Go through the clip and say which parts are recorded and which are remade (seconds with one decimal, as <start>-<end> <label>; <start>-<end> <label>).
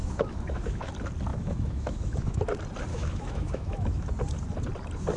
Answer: 0.0-0.9 remade; 0.9-1.3 recorded; 1.3-2.4 remade; 2.4-2.9 recorded; 2.9-4.1 remade; 4.1-5.2 recorded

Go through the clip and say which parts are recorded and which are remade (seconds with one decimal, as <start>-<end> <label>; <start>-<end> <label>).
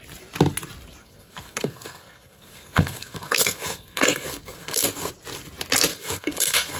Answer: 0.0-1.0 recorded; 1.0-5.1 remade; 5.1-5.9 recorded; 5.9-6.8 remade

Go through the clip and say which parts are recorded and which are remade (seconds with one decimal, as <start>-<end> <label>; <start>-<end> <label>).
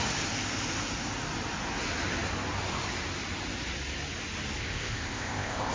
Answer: 0.0-4.6 recorded; 4.6-5.7 remade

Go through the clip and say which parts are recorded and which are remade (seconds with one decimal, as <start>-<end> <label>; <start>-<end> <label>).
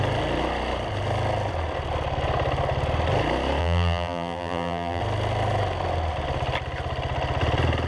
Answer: 0.0-3.6 recorded; 3.6-5.0 remade; 5.0-7.9 recorded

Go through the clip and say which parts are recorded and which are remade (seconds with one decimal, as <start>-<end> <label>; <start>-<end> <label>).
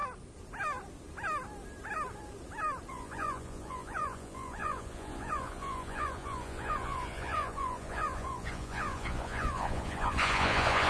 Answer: 0.0-2.9 recorded; 2.9-10.9 remade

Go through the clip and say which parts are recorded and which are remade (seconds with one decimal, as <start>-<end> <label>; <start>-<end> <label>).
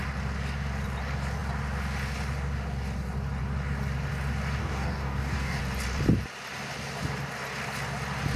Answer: 0.0-4.6 recorded; 4.6-5.6 remade; 5.6-8.4 recorded